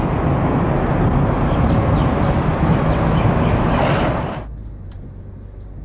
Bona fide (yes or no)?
yes